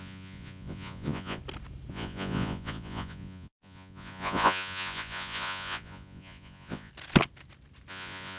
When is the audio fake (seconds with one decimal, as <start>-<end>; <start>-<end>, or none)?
0.0-1.4; 1.9-6.9; 7.9-8.4